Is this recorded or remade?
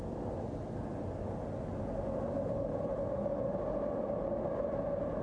recorded